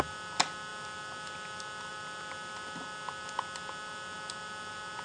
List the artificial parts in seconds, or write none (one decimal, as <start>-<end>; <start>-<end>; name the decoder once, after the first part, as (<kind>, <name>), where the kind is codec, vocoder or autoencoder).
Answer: none

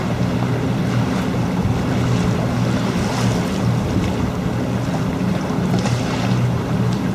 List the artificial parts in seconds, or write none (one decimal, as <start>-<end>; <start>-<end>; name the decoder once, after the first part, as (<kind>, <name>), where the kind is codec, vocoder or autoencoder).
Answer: 0.0-0.8 (vocoder, BigVGAN v2); 5.1-7.1

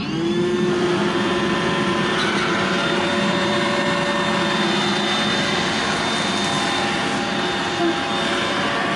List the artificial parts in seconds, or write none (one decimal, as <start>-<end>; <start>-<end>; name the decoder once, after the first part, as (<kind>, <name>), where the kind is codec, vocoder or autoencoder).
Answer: 3.1-3.8 (vocoder, BigVGAN v2)

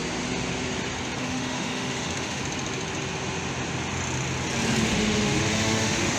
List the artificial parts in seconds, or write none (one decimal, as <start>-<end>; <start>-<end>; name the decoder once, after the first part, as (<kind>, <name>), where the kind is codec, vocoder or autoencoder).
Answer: 1.2-2.4 (autoencoder, DAC-VAE); 4.8-6.2